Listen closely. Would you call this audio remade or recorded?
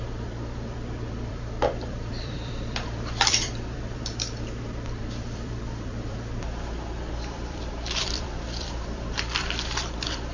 remade